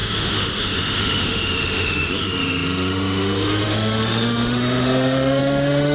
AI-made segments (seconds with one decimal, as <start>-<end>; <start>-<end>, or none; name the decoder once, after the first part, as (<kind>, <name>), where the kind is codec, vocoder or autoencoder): 0.0-5.9 (autoencoder, DAC-VAE)